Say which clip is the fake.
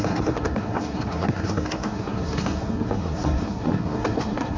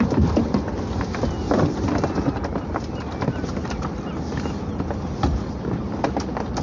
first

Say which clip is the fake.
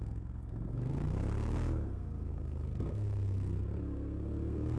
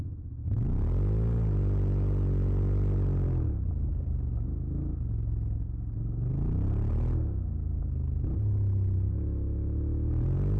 first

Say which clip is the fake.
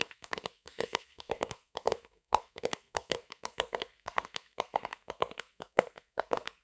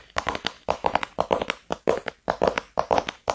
first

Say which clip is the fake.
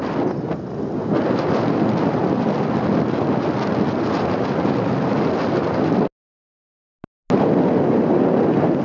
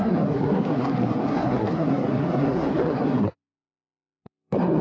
second